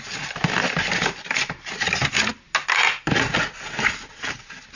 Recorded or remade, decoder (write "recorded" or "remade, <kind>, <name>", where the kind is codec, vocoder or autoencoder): recorded